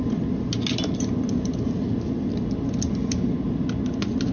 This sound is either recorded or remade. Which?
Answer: recorded